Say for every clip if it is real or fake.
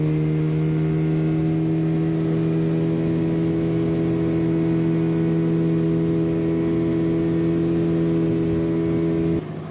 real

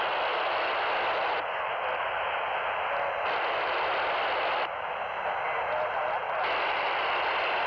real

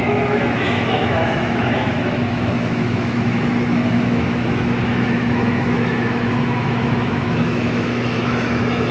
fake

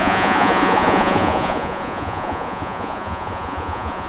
fake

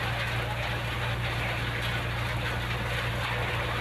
real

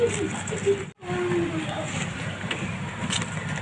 real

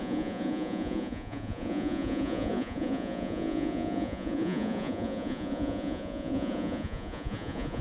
fake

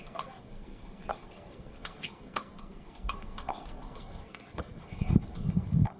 fake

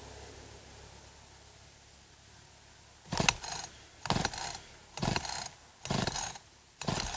real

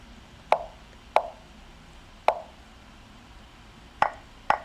real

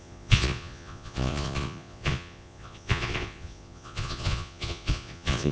fake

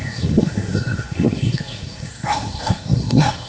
fake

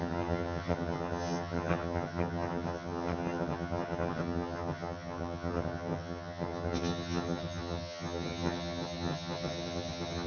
fake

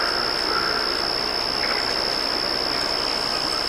real